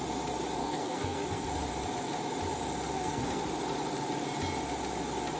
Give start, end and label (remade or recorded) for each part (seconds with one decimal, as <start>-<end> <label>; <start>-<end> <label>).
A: 0.0-0.6 recorded; 0.6-1.5 remade; 1.5-2.9 recorded; 2.9-3.4 remade; 3.4-5.4 recorded